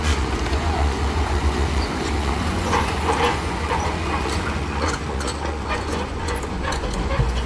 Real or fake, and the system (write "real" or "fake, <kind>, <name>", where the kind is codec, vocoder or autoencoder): fake, vocoder, Vocos